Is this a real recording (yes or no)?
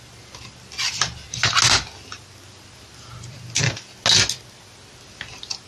yes